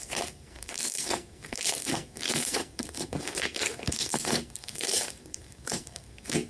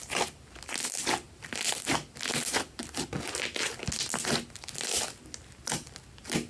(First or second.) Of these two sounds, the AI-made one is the first